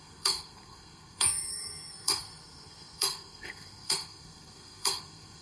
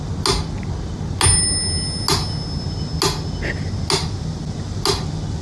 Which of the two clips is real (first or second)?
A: second